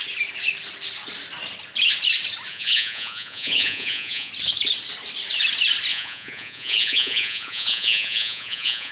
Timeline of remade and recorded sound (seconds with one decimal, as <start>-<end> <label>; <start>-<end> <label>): 0.0-2.5 recorded; 2.5-4.3 remade; 4.3-5.9 recorded; 5.9-8.9 remade